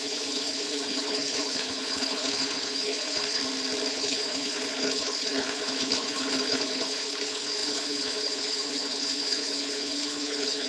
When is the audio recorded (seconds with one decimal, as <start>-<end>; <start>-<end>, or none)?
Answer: 3.4-3.9